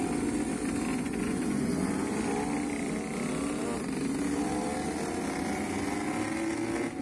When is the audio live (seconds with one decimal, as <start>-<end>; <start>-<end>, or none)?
0.0-0.9; 1.9-7.0